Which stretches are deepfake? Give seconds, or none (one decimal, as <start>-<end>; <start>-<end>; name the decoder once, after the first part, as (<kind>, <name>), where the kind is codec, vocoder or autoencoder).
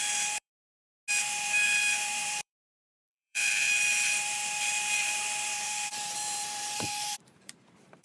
0.0-0.5 (vocoder, BigVGAN v2); 1.2-8.0